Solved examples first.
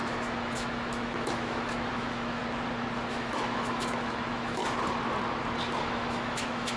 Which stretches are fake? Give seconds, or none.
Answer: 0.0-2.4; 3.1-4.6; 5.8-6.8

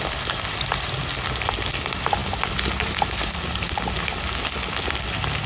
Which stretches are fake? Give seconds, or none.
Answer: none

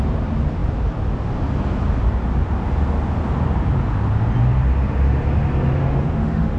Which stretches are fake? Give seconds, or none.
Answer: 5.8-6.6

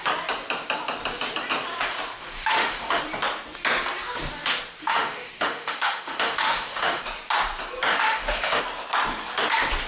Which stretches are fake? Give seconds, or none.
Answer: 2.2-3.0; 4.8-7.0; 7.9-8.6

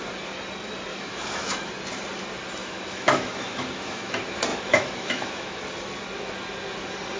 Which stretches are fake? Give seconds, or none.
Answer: 0.9-1.7; 2.6-4.1; 4.5-5.6

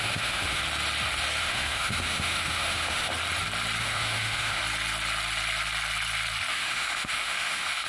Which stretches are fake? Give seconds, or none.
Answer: 0.0-0.6; 1.4-3.1; 3.8-4.6; 6.5-7.9

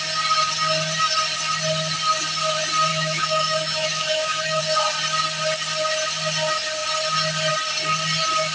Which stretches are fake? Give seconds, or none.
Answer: 2.9-4.6